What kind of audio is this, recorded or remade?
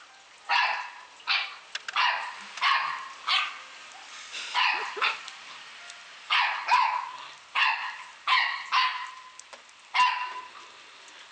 recorded